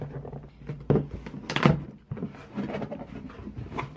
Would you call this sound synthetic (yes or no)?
yes